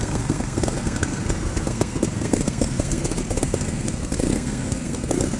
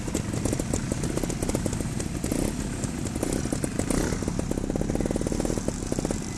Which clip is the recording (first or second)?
second